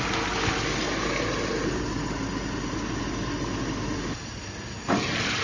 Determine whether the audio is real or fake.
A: real